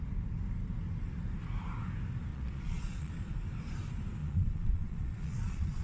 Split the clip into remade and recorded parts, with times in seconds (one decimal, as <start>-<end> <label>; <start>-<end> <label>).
0.0-2.3 recorded; 2.3-3.1 remade; 3.1-4.2 recorded; 4.2-5.8 remade